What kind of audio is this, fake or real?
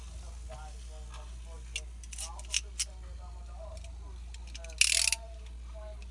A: real